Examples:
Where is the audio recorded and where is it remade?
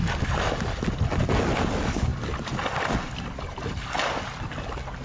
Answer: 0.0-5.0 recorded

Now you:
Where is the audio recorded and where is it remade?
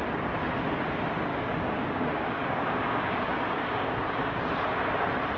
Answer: 0.0-1.3 recorded; 1.3-4.5 remade; 4.5-5.4 recorded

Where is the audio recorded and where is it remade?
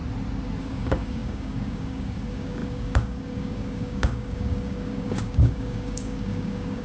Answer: 0.0-0.6 recorded; 0.6-6.8 remade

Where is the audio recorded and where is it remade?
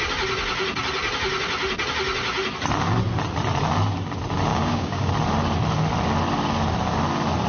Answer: 0.0-4.5 recorded; 4.5-5.1 remade; 5.1-7.5 recorded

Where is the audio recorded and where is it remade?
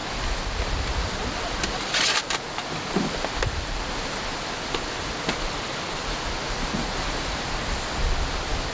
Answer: 0.0-8.7 recorded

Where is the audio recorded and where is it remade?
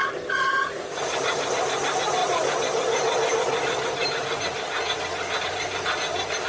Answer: 0.0-6.5 recorded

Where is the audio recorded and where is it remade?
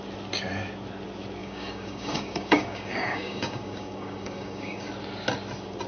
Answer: 0.0-1.4 recorded; 1.4-4.9 remade; 4.9-5.9 recorded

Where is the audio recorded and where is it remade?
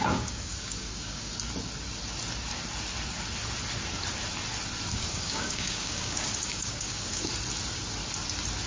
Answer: 0.0-1.3 remade; 1.3-4.9 recorded; 4.9-7.3 remade; 7.3-8.7 recorded